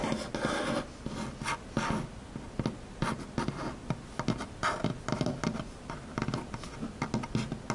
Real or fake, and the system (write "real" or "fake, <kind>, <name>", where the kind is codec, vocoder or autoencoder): real